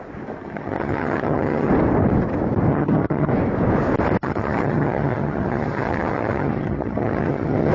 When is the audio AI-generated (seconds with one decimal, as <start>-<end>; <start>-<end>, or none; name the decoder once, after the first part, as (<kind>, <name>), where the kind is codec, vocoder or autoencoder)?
0.4-1.7 (vocoder, HiFi-GAN); 2.7-3.3; 4.2-7.7